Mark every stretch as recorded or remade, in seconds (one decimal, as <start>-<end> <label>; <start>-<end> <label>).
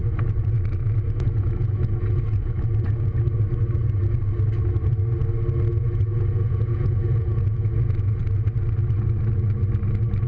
0.0-3.4 remade; 3.4-5.7 recorded; 5.7-8.2 remade; 8.2-10.3 recorded